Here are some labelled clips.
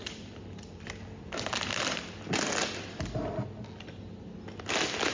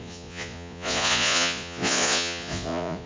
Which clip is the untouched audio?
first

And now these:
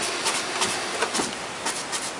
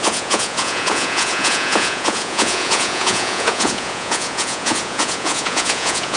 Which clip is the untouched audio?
first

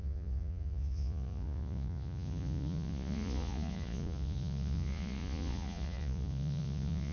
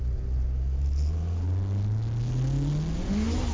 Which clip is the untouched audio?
second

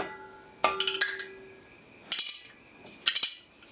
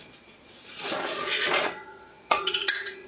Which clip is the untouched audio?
first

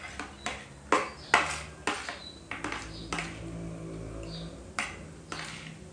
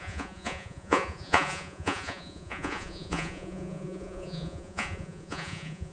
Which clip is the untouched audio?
first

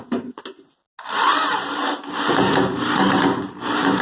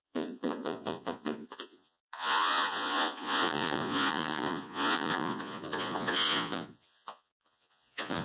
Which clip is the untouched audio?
first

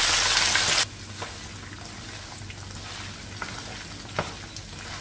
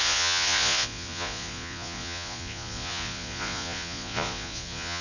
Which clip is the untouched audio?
first